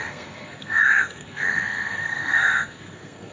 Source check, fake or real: fake